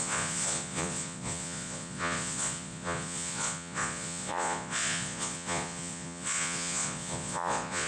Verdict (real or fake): fake